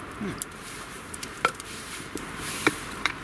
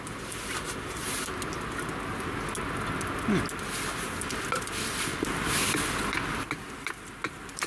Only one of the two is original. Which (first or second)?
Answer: second